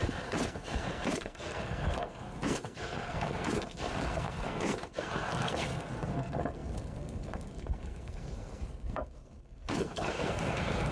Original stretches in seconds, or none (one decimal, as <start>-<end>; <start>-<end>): none